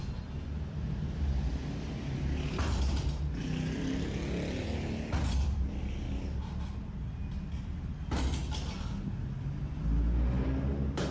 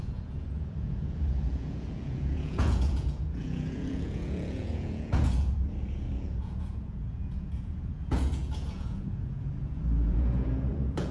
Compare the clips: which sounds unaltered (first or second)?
first